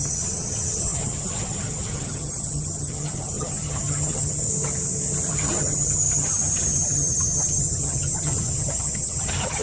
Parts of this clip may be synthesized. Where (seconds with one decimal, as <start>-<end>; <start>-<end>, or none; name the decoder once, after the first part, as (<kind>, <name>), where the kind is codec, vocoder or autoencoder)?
0.0-4.5 (vocoder, HiFi-GAN); 5.3-9.6